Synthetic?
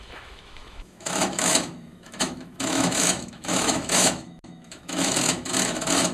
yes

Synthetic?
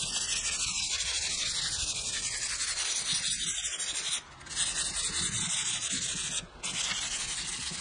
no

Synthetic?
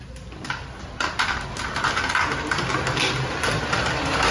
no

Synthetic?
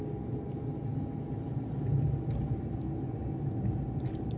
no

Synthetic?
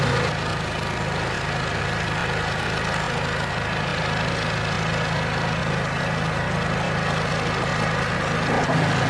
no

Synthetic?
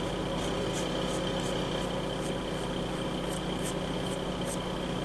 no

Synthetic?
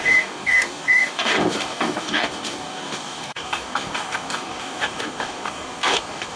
yes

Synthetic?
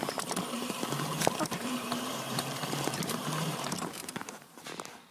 yes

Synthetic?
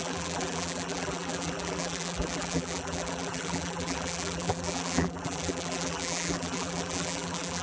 yes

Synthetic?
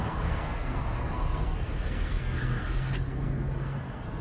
yes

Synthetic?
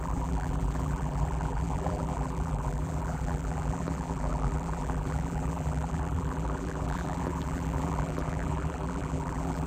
yes